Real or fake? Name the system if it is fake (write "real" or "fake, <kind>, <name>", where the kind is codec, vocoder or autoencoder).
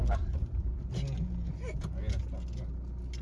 real